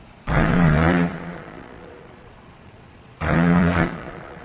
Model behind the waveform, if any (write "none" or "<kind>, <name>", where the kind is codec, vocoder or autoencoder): vocoder, Vocos